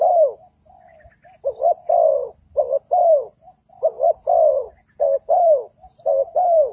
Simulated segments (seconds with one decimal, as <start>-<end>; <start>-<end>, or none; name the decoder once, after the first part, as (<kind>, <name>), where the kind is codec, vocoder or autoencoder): none